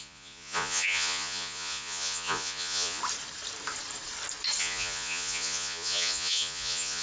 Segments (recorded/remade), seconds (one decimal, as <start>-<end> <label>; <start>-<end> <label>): 0.0-3.0 remade; 3.0-4.6 recorded; 4.6-7.0 remade